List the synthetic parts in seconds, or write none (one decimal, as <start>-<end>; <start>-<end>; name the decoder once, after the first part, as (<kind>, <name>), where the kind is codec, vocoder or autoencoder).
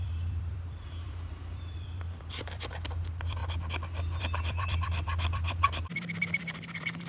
0.0-3.4 (vocoder, BigVGAN v2); 4.2-7.1